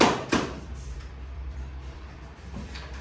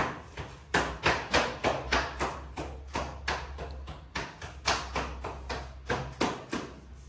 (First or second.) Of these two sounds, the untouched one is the second